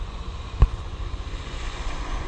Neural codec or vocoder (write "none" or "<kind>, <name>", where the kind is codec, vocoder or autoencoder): vocoder, Vocos